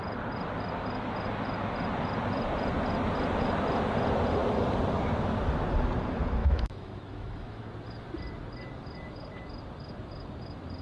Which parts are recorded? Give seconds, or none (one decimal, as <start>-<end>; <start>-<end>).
0.0-6.4; 7.7-10.8